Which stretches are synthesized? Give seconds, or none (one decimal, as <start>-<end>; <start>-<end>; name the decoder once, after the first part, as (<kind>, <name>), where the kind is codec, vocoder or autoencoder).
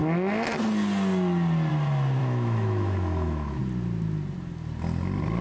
2.2-3.6 (autoencoder, DAC-VAE)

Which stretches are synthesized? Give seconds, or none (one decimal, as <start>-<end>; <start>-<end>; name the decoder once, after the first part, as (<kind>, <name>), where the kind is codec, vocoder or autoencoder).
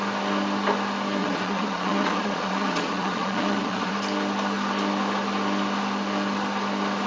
1.2-3.9 (vocoder, Vocos)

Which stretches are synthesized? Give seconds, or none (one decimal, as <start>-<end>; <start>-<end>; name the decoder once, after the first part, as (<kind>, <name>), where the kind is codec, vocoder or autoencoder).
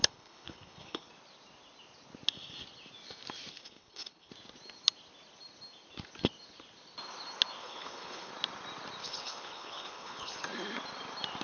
0.0-1.1 (codec, HILCodec); 3.5-4.3; 7.6-8.3; 9.0-10.4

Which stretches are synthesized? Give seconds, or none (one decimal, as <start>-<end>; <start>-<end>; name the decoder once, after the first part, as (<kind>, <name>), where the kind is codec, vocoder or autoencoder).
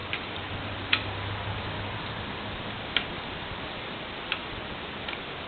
0.0-2.9 (vocoder, BigVGAN v2); 4.4-5.1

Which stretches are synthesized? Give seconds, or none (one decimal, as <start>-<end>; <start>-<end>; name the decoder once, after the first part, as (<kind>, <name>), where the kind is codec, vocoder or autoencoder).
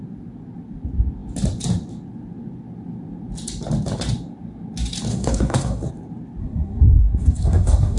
5.1-5.9 (codec, SNAC); 6.4-8.0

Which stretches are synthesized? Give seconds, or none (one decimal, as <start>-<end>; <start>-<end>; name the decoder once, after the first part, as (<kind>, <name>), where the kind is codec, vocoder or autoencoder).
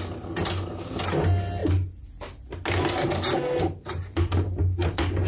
none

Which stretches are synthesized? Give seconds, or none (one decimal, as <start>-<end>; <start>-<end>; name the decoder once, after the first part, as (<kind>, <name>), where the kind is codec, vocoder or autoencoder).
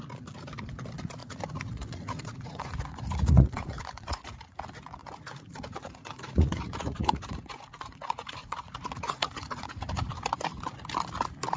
1.2-4.6 (vocoder, Vocos); 5.0-10.1